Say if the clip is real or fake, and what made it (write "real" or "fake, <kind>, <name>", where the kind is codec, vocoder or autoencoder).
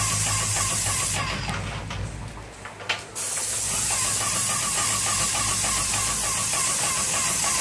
real